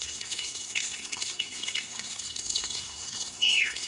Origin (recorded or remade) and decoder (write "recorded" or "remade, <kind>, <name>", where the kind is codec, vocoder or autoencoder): remade, codec, SNAC